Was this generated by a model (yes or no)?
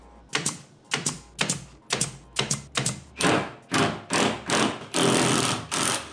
no